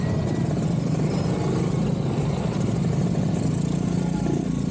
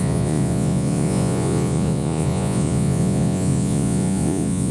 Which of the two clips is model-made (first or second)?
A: second